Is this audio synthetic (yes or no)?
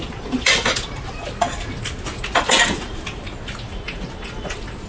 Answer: no